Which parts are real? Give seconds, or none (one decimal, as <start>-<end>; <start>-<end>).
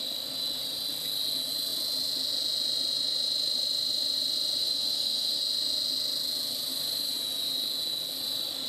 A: 0.0-4.6; 5.4-8.7